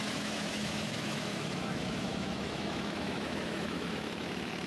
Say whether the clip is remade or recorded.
remade